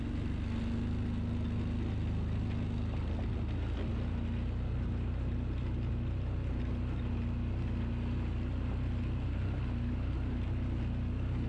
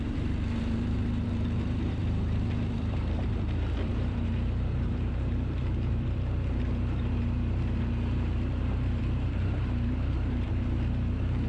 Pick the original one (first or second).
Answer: first